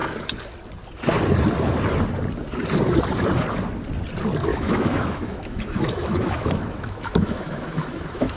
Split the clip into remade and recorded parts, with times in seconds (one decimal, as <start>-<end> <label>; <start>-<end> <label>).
0.0-4.5 recorded; 4.5-8.4 remade